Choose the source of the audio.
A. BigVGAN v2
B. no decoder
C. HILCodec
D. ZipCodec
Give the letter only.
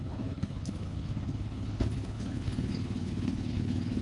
C